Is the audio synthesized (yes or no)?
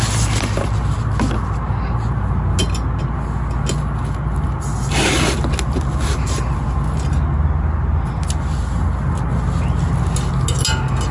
no